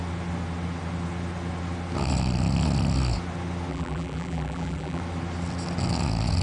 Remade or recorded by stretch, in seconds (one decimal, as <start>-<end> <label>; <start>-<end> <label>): 0.0-3.7 recorded; 3.7-5.0 remade; 5.0-6.4 recorded